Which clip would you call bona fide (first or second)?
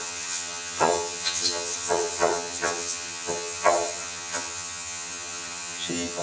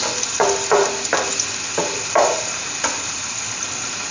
second